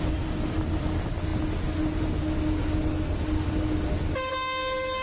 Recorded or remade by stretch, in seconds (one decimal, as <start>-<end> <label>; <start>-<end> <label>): 0.0-5.0 recorded